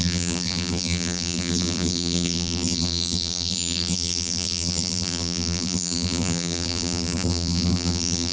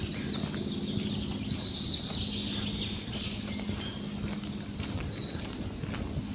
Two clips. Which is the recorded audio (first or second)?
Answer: second